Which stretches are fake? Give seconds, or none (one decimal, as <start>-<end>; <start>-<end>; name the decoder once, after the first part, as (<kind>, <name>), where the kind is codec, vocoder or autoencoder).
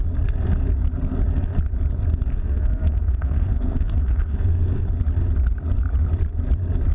2.3-4.9 (codec, SNAC)